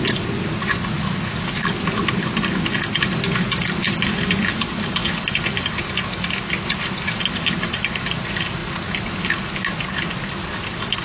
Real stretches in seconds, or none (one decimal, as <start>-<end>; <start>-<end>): 0.0-11.0